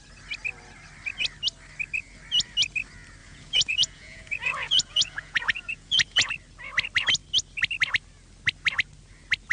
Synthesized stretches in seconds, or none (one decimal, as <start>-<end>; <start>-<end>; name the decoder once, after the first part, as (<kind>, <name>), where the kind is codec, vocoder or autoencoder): 3.2-6.3 (vocoder, Vocos)